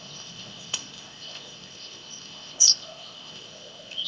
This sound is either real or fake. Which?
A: fake